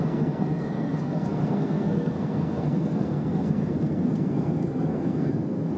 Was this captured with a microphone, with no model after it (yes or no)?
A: no